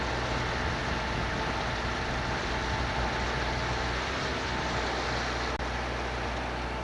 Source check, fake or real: real